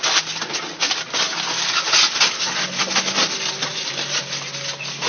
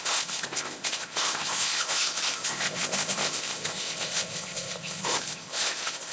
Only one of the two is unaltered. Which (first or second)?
first